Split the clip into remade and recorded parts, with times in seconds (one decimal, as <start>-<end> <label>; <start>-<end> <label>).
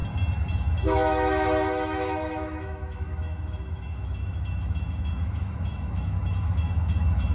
0.0-0.5 recorded; 0.5-7.3 remade